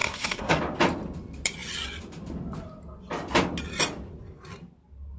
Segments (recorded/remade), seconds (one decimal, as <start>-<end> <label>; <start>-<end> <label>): 0.0-0.6 remade; 0.6-5.2 recorded